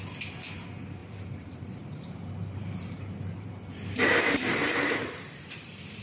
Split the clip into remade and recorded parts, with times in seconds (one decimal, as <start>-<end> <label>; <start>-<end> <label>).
0.0-1.0 recorded; 1.0-3.5 remade; 3.5-4.6 recorded; 4.6-6.0 remade